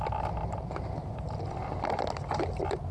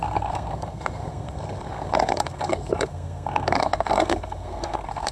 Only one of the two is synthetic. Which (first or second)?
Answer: second